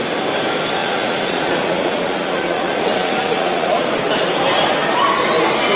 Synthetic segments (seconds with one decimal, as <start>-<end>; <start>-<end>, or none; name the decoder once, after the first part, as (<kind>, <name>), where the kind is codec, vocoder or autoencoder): 0.8-3.9 (vocoder, Vocos)